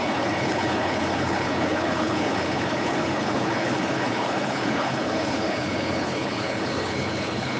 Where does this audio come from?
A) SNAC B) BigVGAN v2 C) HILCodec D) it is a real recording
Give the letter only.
C